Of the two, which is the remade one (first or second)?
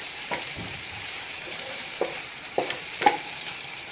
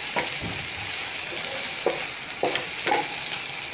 first